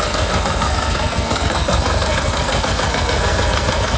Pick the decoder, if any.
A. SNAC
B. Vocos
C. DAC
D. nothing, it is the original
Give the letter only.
A